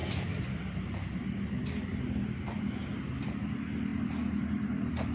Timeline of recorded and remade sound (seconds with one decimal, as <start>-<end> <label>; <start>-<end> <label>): 0.0-1.9 recorded; 1.9-2.9 remade; 2.9-5.1 recorded